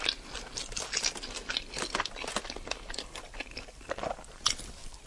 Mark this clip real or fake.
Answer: real